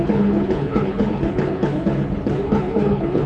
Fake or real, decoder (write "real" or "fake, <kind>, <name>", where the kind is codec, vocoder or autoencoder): fake, codec, HILCodec